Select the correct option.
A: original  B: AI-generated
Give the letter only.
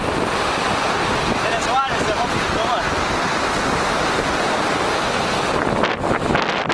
A